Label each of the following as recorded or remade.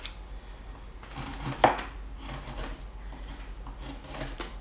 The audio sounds recorded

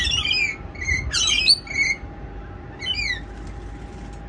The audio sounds recorded